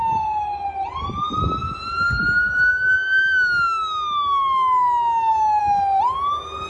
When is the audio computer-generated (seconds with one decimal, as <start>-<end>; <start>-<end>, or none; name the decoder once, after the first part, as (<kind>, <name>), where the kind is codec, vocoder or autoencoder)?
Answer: none